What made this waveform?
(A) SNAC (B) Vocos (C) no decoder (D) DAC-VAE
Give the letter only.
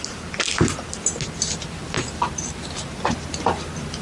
C